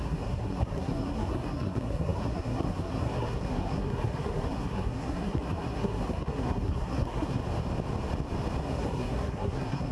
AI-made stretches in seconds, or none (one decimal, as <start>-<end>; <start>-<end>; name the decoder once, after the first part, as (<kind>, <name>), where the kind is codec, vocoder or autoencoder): 0.0-7.4 (codec, SNAC); 8.6-9.9